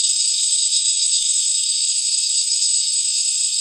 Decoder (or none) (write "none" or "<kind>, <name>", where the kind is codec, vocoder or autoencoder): codec, SNAC